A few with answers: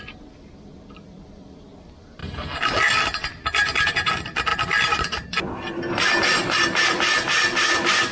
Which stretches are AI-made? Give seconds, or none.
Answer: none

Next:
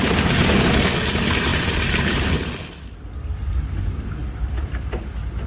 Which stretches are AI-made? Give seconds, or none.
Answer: 1.5-2.3 (vocoder, BigVGAN v2)